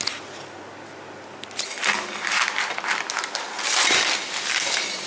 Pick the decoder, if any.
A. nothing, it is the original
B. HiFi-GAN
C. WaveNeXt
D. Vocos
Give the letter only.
A